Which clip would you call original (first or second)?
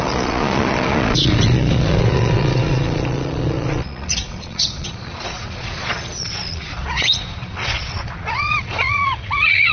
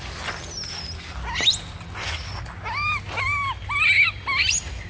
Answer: second